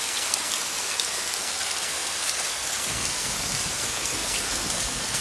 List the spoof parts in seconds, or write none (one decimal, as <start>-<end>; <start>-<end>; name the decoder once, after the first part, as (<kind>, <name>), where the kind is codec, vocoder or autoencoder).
0.0-5.2 (codec, SNAC)